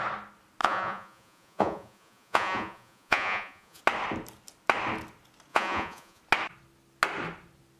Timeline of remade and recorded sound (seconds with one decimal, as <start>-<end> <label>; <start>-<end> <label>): 0.0-0.6 recorded; 0.6-3.8 remade; 3.8-5.5 recorded; 5.5-6.2 remade; 6.2-7.8 recorded